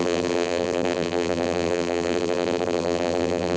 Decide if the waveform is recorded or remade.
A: remade